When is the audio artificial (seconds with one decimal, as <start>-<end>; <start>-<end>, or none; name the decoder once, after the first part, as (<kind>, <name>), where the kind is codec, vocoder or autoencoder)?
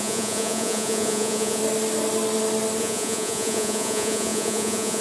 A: 0.0-1.6 (vocoder, Vocos); 2.8-5.0